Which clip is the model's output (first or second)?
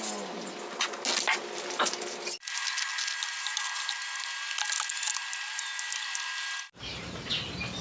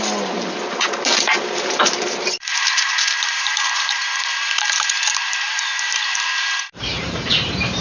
second